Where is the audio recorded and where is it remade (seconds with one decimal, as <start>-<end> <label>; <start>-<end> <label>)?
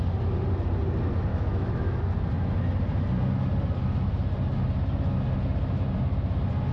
0.0-1.3 recorded; 1.3-2.0 remade; 2.0-6.7 recorded